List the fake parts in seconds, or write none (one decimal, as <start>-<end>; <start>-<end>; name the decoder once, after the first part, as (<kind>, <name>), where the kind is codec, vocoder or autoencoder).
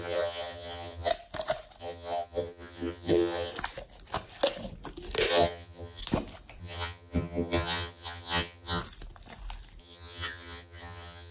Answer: 0.0-1.1 (vocoder, HiFi-GAN); 1.8-3.5; 5.3-6.0; 6.6-8.8; 9.8-11.3